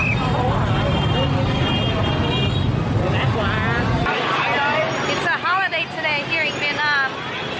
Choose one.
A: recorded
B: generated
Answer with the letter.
A